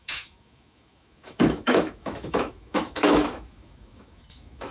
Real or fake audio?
fake